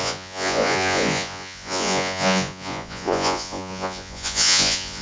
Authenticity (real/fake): fake